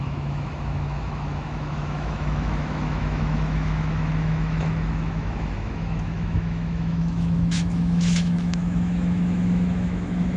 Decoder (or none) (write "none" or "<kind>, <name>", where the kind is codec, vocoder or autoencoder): autoencoder, DAC-VAE